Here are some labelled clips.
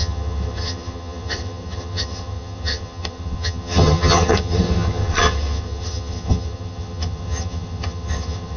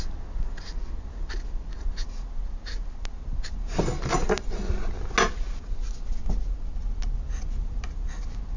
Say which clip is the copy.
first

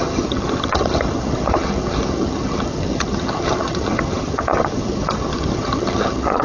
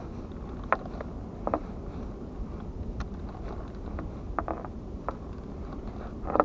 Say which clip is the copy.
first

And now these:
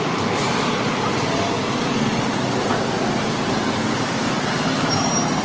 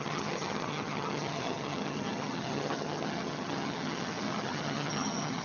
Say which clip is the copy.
second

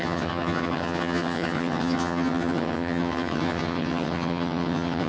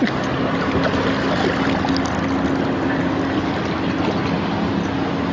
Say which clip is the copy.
first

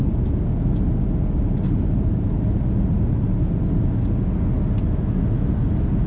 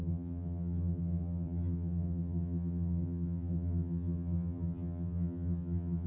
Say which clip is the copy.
second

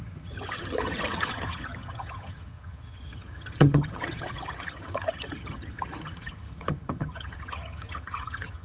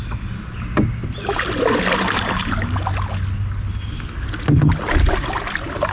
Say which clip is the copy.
first